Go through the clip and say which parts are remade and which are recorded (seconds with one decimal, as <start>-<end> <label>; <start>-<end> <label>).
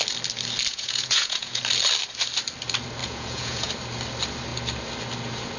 0.0-0.7 recorded; 0.7-1.6 remade; 1.6-3.0 recorded; 3.0-3.7 remade; 3.7-5.6 recorded